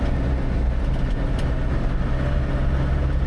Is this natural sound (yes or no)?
yes